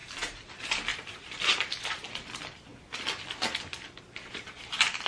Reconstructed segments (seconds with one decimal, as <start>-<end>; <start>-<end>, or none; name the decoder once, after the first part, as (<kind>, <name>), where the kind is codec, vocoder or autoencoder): 0.0-0.5 (vocoder, BigVGAN v2); 0.9-2.1